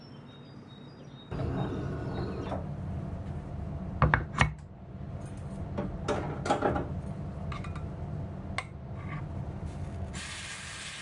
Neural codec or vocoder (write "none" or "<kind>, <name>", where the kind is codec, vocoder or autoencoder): none